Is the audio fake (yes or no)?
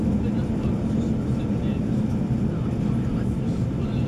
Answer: no